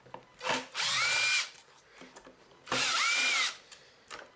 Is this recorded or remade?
recorded